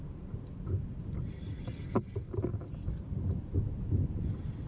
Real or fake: real